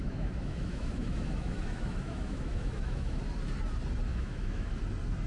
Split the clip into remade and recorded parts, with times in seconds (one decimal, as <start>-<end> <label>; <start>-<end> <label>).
0.0-3.2 remade; 3.2-4.1 recorded; 4.1-4.8 remade; 4.8-5.3 recorded